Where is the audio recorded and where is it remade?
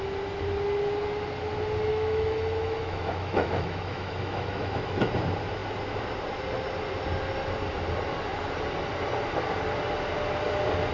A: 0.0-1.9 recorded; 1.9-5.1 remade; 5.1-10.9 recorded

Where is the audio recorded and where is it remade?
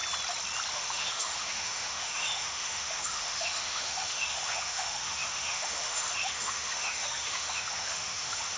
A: 0.0-0.7 recorded; 0.7-8.6 remade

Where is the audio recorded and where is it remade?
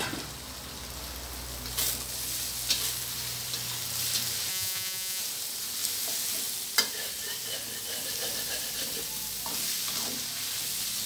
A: 0.0-4.5 recorded; 4.5-5.2 remade; 5.2-11.1 recorded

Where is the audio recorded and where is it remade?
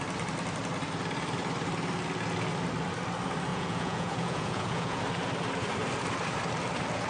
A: 0.0-3.5 recorded; 3.5-5.0 remade; 5.0-7.1 recorded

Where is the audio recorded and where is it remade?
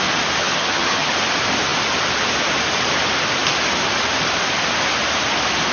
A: 0.0-0.4 recorded; 0.4-1.1 remade; 1.1-5.7 recorded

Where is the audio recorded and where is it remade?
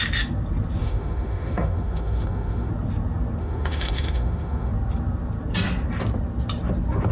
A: 0.0-0.8 recorded; 0.8-2.7 remade; 2.7-3.4 recorded; 3.4-4.7 remade; 4.7-7.1 recorded